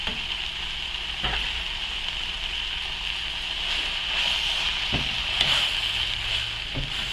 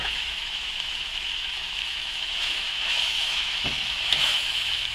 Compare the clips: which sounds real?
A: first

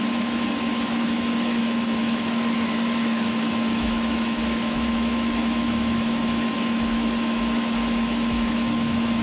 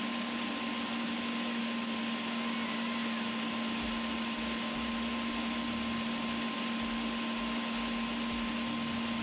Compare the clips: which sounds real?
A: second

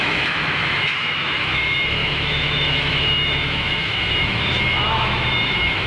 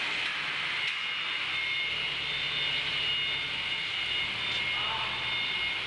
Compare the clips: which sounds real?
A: second